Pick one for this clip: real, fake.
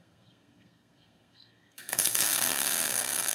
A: fake